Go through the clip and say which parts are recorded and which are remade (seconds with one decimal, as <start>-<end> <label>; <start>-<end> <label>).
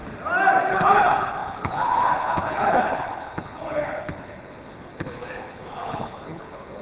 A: 0.0-0.7 recorded; 0.7-6.8 remade